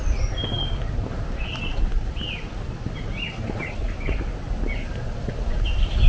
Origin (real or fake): real